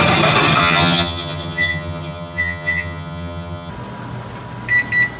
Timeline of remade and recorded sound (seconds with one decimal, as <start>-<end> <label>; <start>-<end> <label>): 0.0-0.6 recorded; 0.6-3.7 remade; 3.7-5.2 recorded